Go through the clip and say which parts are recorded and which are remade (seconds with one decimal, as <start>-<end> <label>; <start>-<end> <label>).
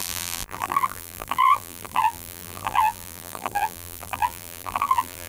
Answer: 0.0-5.3 remade